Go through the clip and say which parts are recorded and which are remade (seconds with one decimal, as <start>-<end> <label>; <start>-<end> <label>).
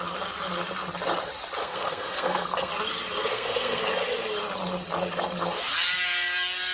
0.0-1.6 recorded; 1.6-2.7 remade; 2.7-3.3 recorded; 3.3-3.8 remade; 3.8-6.7 recorded